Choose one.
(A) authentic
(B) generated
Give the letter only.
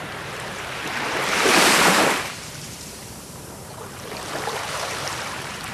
B